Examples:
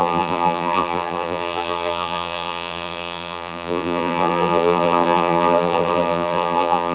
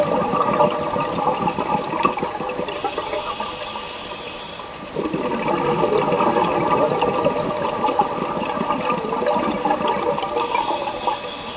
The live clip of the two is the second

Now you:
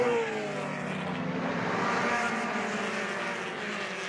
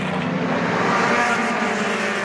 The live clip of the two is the first